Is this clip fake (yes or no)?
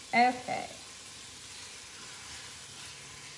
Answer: no